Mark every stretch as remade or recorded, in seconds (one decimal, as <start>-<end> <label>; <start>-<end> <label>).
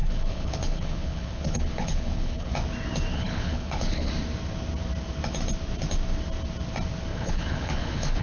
0.0-2.5 remade; 2.5-3.1 recorded; 3.1-4.1 remade; 4.1-7.1 recorded; 7.1-8.2 remade